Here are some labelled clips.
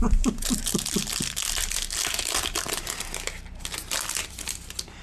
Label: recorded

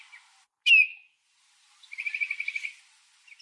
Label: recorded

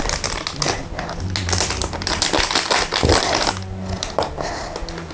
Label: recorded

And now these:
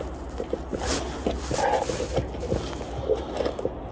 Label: recorded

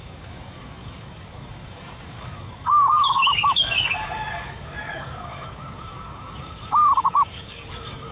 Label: remade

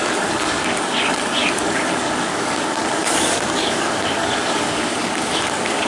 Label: remade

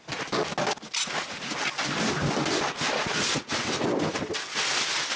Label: recorded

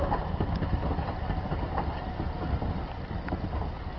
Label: recorded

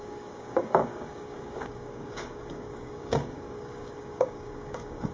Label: remade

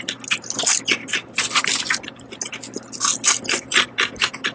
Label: recorded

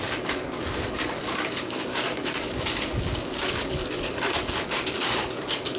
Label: remade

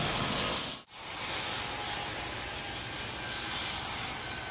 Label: recorded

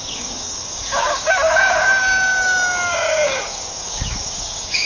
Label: remade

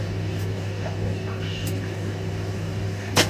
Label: remade